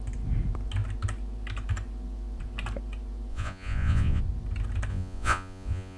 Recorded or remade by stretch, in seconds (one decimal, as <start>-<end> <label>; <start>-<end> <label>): 0.0-3.3 recorded; 3.3-4.2 remade; 4.2-4.9 recorded; 4.9-6.0 remade